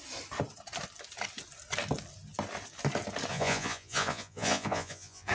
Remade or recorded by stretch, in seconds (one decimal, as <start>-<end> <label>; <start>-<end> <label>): 0.0-3.3 recorded; 3.3-5.3 remade